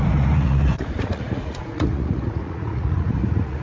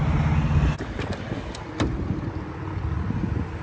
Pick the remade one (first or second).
first